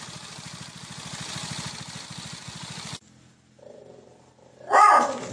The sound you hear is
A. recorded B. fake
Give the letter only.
A